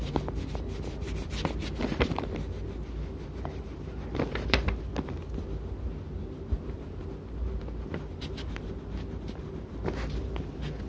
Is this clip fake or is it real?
real